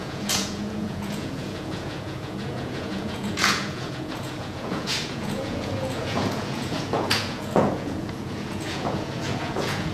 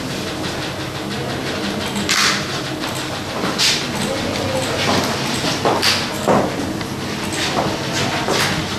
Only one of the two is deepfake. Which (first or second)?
first